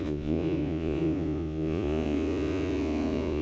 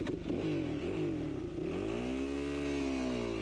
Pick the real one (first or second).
second